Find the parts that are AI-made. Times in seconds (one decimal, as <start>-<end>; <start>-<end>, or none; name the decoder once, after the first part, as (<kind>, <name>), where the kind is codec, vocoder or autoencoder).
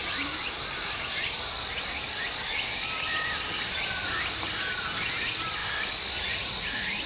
none